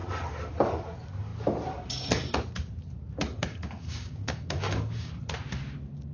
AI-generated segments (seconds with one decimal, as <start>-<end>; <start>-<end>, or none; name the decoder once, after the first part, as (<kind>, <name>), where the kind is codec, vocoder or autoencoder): 3.5-5.1 (codec, DAC)